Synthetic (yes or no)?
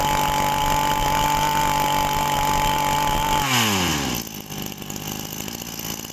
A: no